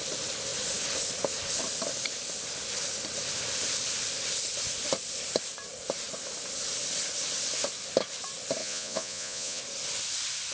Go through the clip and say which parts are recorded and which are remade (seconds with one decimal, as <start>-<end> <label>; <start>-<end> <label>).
0.0-8.6 recorded; 8.6-9.6 remade; 9.6-10.5 recorded